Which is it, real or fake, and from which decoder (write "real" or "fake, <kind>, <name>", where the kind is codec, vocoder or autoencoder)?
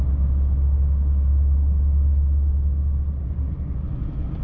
real